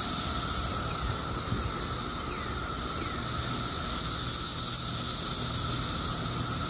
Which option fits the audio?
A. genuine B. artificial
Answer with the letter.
A